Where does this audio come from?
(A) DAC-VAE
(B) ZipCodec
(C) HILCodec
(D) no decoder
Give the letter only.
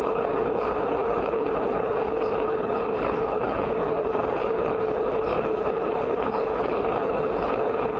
C